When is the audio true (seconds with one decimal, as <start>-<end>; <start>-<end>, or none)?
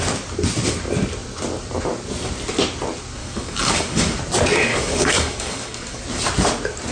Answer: 0.0-3.2; 4.2-4.7; 6.0-6.9